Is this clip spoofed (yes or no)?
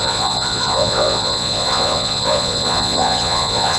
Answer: yes